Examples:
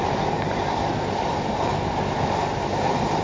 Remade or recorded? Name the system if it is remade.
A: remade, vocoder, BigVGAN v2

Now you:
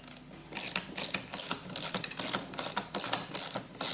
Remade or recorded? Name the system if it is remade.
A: recorded